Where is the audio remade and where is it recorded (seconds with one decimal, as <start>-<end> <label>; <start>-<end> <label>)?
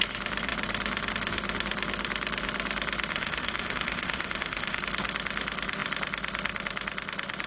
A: 0.0-3.1 recorded; 3.1-4.8 remade; 4.8-7.5 recorded